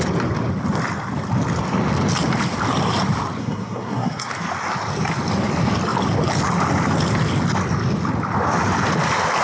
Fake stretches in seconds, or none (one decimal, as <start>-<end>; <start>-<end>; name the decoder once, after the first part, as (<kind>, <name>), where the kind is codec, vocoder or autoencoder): 3.4-4.3 (codec, SNAC)